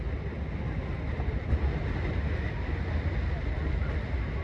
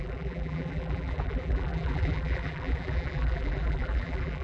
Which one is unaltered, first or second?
first